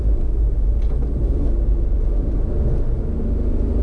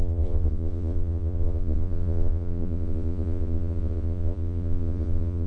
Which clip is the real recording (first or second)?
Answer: first